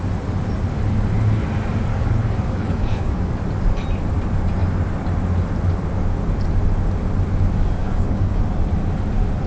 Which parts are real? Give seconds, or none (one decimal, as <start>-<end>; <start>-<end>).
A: 0.0-1.9; 3.3-7.8; 8.4-9.5